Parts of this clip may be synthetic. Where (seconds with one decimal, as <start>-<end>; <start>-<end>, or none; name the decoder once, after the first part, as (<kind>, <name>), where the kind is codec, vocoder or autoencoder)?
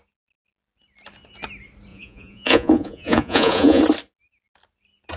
1.9-3.8 (vocoder, Vocos)